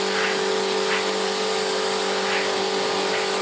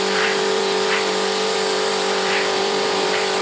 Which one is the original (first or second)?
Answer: first